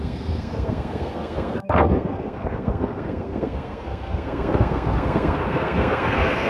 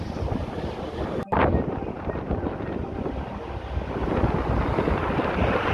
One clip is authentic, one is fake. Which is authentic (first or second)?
second